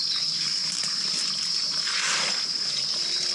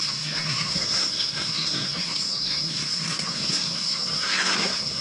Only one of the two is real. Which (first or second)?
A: first